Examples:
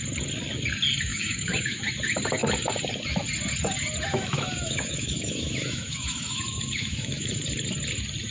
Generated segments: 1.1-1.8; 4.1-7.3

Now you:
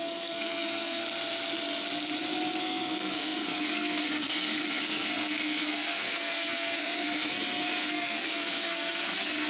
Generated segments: 0.0-1.0; 2.6-9.5

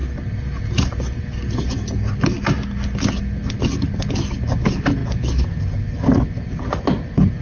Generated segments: none

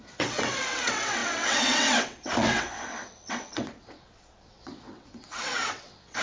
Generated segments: 0.0-6.2